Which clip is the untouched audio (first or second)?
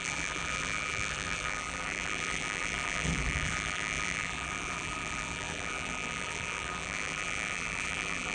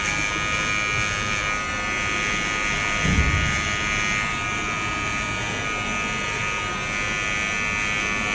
second